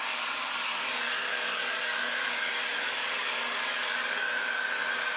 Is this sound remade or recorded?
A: remade